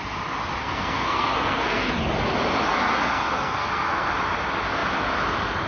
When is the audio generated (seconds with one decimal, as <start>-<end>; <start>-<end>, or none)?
0.6-1.9; 2.7-4.1